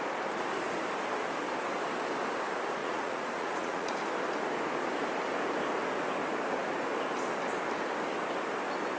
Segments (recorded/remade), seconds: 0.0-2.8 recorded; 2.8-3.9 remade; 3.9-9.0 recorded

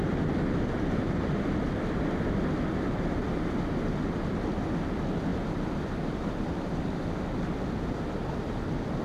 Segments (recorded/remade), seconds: 0.0-9.0 recorded

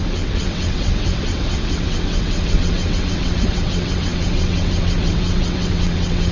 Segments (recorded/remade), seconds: 0.0-6.3 remade

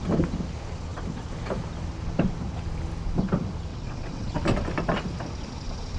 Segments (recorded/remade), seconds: 0.0-3.7 recorded; 3.7-4.4 remade; 4.4-6.0 recorded